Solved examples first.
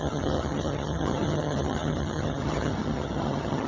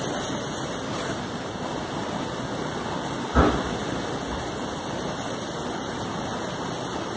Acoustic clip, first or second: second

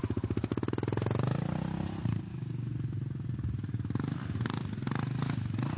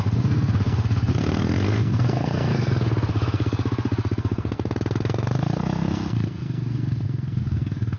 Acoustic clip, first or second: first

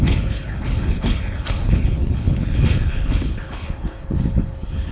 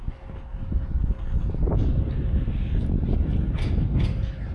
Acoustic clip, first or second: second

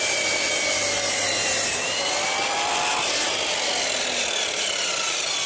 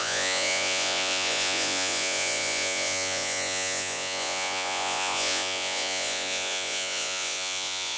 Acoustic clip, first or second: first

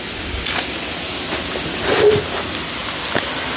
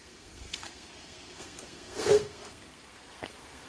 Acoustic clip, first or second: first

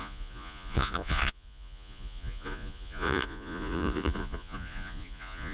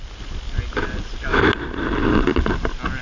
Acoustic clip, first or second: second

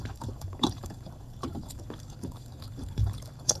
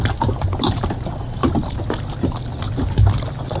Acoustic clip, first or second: second